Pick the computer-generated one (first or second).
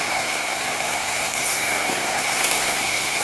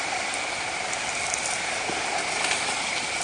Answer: first